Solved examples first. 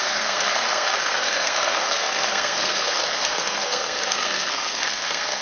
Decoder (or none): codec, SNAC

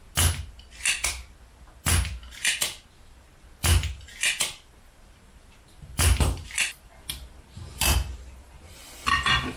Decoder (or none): none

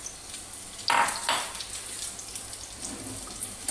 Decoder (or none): none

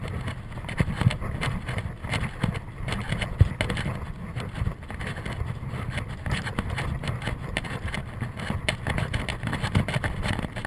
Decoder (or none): none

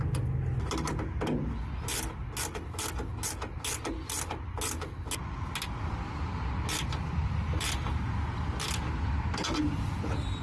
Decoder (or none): none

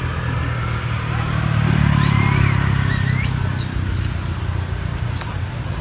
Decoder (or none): none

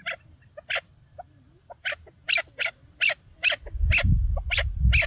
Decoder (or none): none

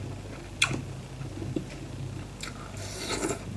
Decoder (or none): none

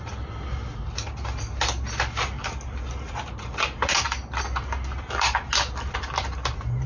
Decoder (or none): none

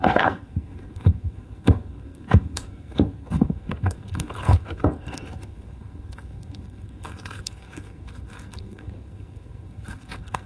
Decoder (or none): codec, SNAC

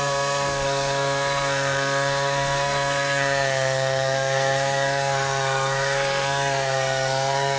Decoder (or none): codec, SNAC